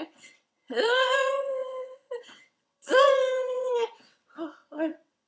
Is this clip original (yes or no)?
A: no